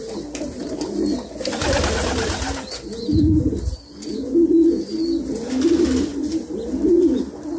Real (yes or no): yes